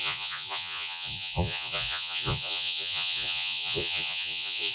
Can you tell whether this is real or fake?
fake